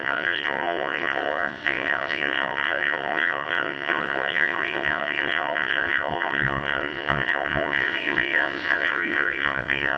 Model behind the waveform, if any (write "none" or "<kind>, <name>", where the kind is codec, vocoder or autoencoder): vocoder, WaveNeXt